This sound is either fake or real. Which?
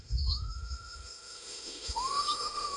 fake